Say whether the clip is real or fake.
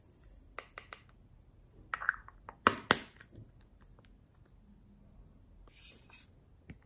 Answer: real